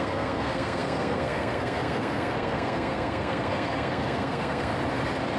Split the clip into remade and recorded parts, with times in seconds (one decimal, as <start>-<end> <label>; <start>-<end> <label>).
0.0-4.7 remade; 4.7-5.4 recorded